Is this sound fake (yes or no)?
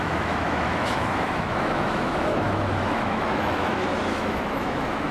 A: yes